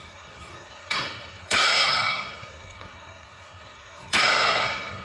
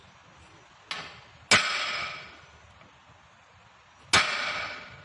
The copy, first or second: first